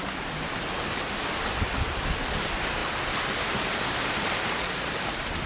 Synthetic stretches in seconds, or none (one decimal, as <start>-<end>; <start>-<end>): none